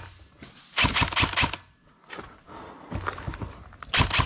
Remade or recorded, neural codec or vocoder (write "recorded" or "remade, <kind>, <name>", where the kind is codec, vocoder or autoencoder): recorded